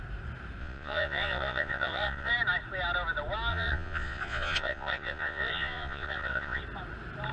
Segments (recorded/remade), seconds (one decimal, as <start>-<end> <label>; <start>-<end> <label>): 0.0-0.6 recorded; 0.6-2.3 remade; 2.3-3.5 recorded; 3.5-6.6 remade; 6.6-7.3 recorded